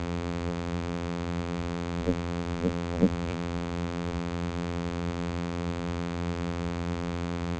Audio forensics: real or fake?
fake